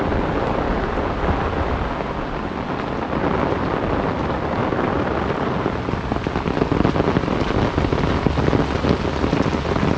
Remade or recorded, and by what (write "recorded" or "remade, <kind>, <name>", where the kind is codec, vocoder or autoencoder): recorded